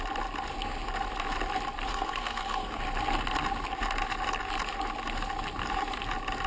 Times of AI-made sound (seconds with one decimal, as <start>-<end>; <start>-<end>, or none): 1.9-2.8